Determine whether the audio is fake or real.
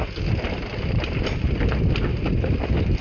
real